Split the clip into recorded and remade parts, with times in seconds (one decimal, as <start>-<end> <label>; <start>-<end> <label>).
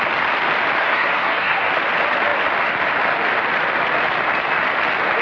0.0-0.8 recorded; 0.8-1.7 remade; 1.7-5.2 recorded